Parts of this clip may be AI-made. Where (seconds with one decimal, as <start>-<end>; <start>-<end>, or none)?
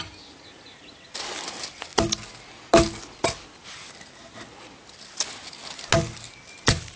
none